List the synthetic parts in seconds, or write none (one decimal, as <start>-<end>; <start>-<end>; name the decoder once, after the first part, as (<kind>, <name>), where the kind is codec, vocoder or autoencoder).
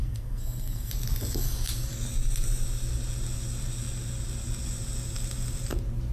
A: 0.0-0.9 (codec, SNAC)